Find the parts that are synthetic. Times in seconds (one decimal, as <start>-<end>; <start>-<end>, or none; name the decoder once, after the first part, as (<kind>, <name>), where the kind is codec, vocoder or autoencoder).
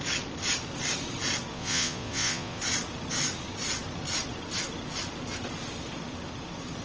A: 1.5-2.6 (vocoder, Vocos)